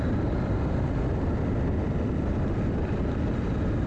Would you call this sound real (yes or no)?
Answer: yes